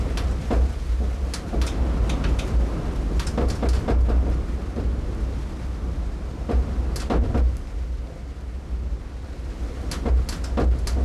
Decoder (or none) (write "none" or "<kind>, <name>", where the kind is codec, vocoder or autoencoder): none